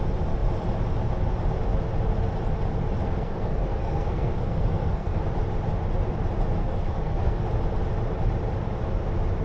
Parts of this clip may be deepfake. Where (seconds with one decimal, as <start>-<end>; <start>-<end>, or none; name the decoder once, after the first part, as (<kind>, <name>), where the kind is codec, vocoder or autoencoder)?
3.0-5.2 (codec, SNAC); 6.6-7.4